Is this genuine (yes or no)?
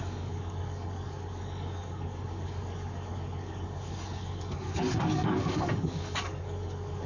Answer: no